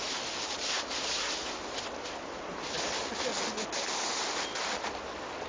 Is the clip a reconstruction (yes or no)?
no